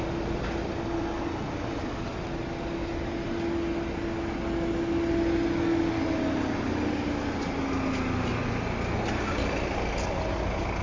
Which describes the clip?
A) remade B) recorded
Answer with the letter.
B